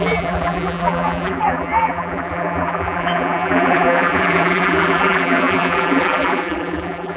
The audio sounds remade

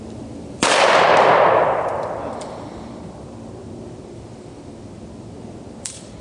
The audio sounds remade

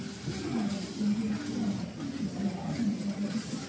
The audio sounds recorded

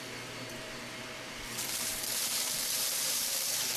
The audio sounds remade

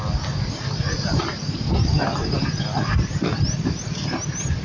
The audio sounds recorded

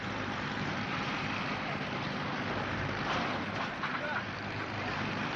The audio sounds remade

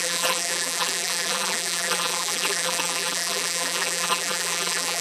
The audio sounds remade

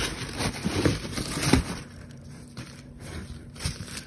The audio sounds remade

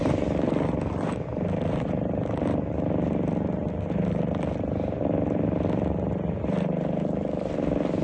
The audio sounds recorded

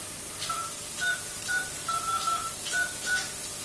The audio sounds remade